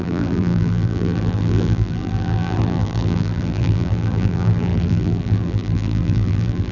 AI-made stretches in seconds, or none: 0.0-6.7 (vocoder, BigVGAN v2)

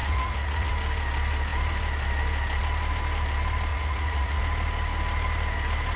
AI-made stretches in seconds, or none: 0.0-0.7 (vocoder, Vocos); 3.7-4.4

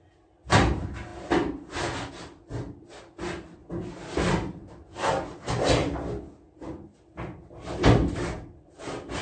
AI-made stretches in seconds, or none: none

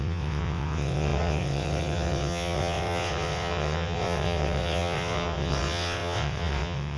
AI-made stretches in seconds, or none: 0.0-7.0 (vocoder, WaveNeXt)

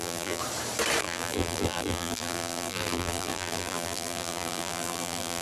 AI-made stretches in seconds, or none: 0.0-0.4 (vocoder, BigVGAN v2); 1.0-5.4